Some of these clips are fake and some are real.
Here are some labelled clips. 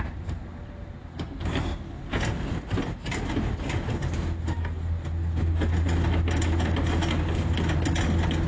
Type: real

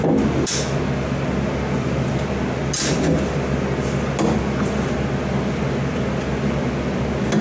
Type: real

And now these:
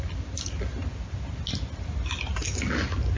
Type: real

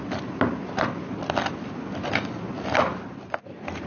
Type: real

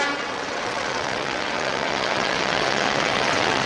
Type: fake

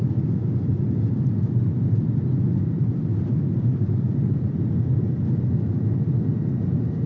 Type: real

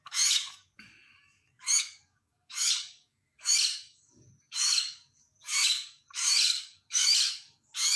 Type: fake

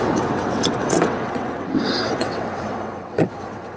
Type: fake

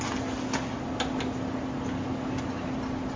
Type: real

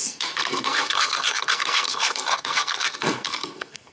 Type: fake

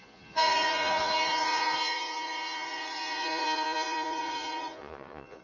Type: fake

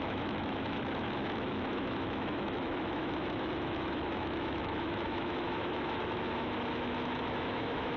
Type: fake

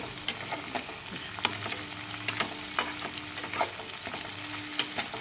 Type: real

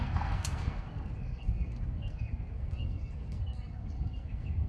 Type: fake